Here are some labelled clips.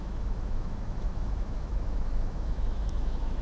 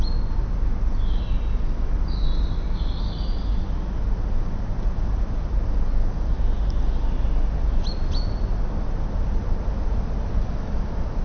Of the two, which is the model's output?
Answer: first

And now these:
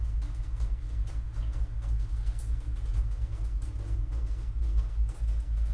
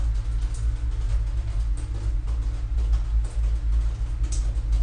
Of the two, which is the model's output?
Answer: first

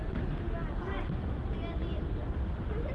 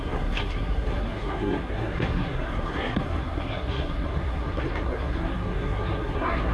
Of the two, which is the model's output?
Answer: second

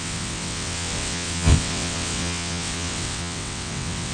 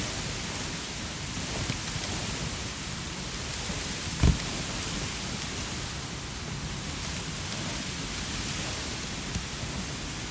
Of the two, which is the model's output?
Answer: first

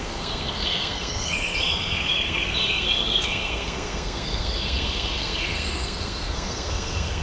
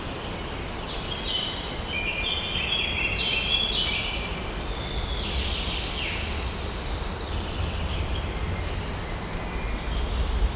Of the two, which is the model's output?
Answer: first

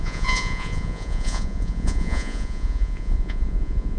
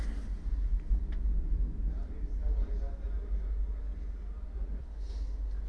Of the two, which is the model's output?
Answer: first